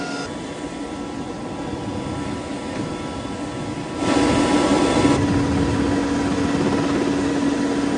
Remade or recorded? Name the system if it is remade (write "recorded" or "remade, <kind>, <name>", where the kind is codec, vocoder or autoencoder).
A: recorded